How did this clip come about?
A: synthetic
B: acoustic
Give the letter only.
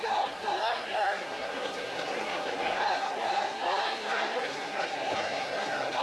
A